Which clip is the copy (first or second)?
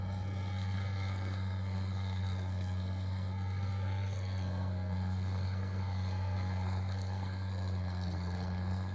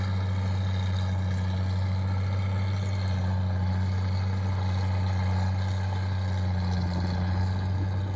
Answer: first